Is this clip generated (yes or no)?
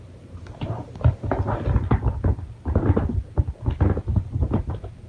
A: no